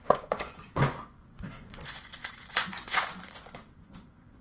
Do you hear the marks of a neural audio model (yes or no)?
yes